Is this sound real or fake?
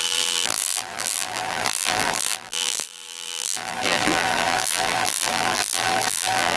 fake